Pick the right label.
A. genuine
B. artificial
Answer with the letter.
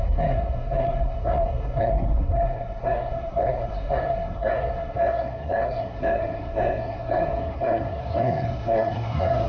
B